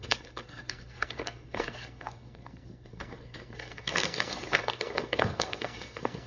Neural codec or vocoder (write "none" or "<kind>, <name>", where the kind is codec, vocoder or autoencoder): codec, SNAC